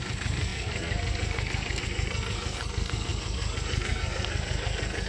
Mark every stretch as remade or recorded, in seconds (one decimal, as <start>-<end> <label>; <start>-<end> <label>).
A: 0.0-5.1 remade